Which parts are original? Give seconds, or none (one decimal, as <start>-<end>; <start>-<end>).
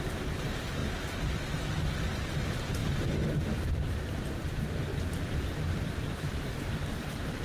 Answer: 2.8-3.7